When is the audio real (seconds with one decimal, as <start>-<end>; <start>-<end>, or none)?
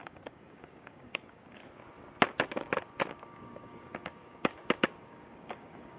1.6-3.1; 4.5-5.0